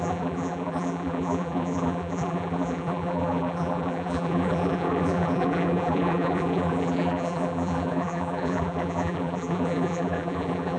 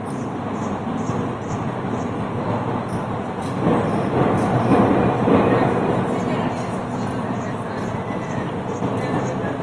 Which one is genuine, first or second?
second